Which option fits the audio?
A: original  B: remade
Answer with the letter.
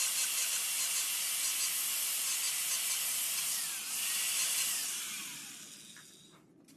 A